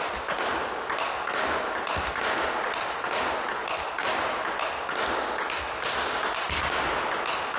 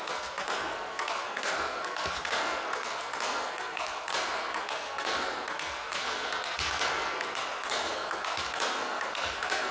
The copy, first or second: second